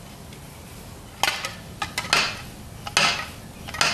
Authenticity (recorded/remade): recorded